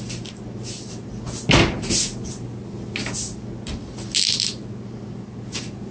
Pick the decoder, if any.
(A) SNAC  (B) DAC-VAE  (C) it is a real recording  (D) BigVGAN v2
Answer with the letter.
C